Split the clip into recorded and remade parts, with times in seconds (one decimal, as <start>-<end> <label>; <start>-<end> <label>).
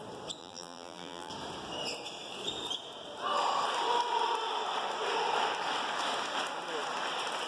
0.0-0.4 recorded; 0.4-1.3 remade; 1.3-7.5 recorded